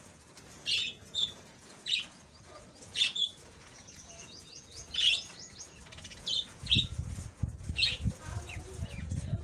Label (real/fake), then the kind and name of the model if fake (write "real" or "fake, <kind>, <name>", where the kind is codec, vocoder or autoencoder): fake, vocoder, Vocos